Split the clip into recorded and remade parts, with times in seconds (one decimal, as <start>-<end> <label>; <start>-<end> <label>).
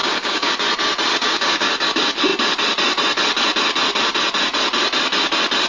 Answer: 0.0-0.5 remade; 0.5-1.1 recorded; 1.1-1.9 remade; 1.9-5.7 recorded